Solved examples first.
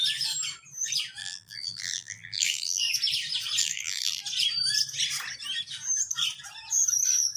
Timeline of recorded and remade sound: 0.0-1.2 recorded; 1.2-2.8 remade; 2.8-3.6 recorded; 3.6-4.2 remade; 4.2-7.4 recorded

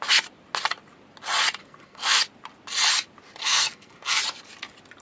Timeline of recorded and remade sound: 0.0-1.6 recorded; 1.6-2.2 remade; 2.2-3.4 recorded; 3.4-4.2 remade; 4.2-5.0 recorded

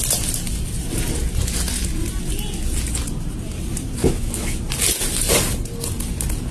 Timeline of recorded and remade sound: 0.0-4.0 recorded; 4.0-4.6 remade; 4.6-6.5 recorded

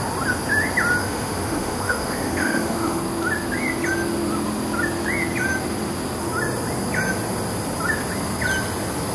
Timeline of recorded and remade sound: 0.0-1.0 recorded; 1.0-3.0 remade; 3.0-9.1 recorded

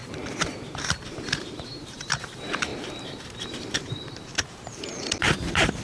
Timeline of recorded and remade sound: 0.0-5.8 remade

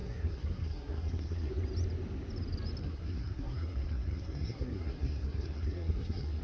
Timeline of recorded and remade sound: 0.0-1.5 remade; 1.5-2.8 recorded; 2.8-6.4 remade

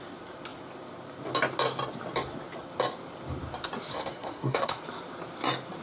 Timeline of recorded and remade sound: 0.0-3.9 recorded; 3.9-4.8 remade; 4.8-5.8 recorded